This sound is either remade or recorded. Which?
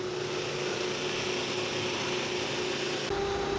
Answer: recorded